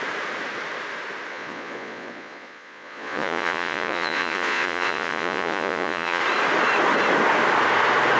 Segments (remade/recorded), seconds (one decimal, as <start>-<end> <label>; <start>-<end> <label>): 0.0-1.3 recorded; 1.3-6.2 remade; 6.2-8.2 recorded